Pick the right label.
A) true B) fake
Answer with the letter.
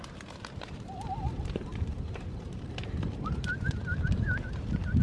B